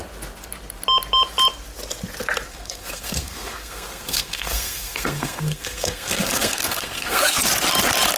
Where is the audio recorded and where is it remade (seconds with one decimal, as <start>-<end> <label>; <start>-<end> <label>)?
0.0-2.5 recorded; 2.5-7.4 remade; 7.4-8.2 recorded

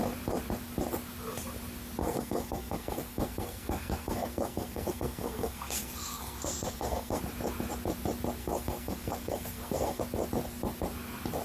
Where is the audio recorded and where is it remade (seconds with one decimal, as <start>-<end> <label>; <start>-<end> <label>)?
0.0-2.0 recorded; 2.0-7.2 remade; 7.2-8.4 recorded; 8.4-10.0 remade; 10.0-11.4 recorded

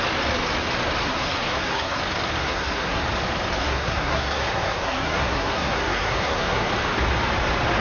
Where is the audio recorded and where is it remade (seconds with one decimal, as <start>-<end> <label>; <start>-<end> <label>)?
0.0-1.0 recorded; 1.0-2.0 remade; 2.0-2.4 recorded; 2.4-3.0 remade; 3.0-3.6 recorded; 3.6-6.7 remade; 6.7-7.8 recorded

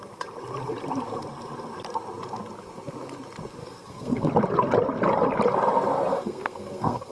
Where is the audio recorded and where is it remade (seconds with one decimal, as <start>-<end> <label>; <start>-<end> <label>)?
0.0-3.6 recorded; 3.6-4.3 remade; 4.3-6.1 recorded; 6.1-7.1 remade

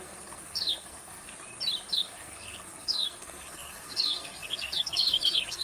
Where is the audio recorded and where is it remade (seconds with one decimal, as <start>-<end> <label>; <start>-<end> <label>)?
0.0-1.3 remade; 1.3-1.9 recorded; 1.9-5.6 remade

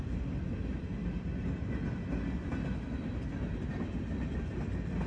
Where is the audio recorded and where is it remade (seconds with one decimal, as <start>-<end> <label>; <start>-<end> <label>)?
0.0-5.1 recorded

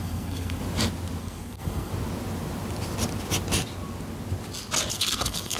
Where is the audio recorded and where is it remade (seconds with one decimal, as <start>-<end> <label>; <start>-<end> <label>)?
0.0-0.6 remade; 0.6-1.2 recorded; 1.2-1.9 remade; 1.9-4.9 recorded; 4.9-5.6 remade

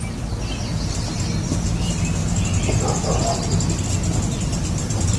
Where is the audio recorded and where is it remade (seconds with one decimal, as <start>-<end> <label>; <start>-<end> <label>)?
0.0-5.2 recorded